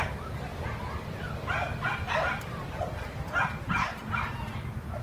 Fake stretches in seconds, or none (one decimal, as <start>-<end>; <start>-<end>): 0.5-2.8